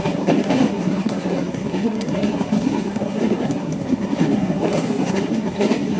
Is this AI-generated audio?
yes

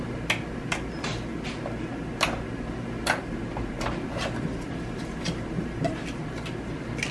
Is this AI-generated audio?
no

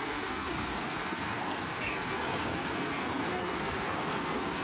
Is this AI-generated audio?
yes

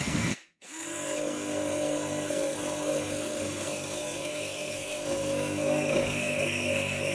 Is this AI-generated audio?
yes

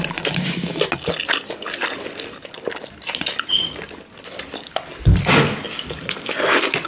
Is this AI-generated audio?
no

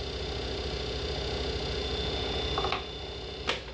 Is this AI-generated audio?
no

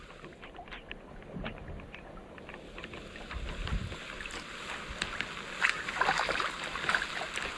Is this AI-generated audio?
no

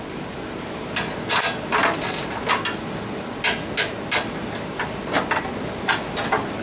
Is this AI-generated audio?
no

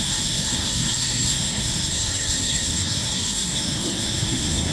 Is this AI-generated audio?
yes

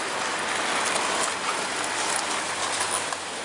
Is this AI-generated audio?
no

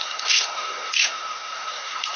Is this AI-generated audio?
yes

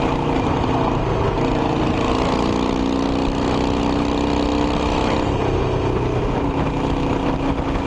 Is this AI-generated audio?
no